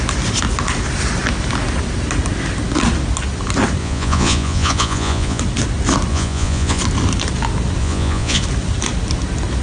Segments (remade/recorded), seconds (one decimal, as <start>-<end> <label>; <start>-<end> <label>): 0.0-3.8 recorded; 3.8-5.4 remade; 5.4-6.1 recorded; 6.1-6.8 remade; 6.8-7.8 recorded; 7.8-8.4 remade; 8.4-9.6 recorded